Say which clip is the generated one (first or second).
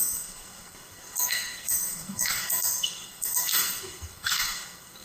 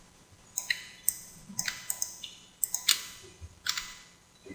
first